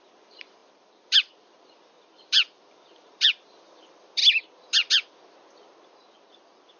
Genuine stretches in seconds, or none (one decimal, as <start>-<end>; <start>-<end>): 4.2-6.8